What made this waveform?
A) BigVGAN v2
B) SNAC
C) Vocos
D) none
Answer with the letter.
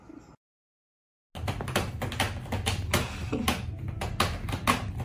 D